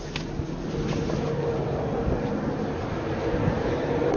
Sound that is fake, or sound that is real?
real